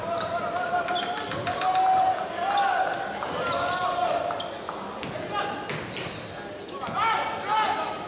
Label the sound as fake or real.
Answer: real